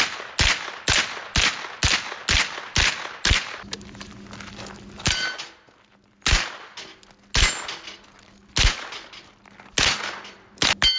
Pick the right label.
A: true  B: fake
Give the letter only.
A